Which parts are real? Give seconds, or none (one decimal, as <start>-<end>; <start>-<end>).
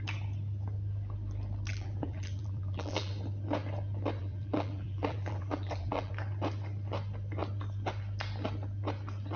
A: 0.0-1.7; 3.1-4.2; 6.1-9.4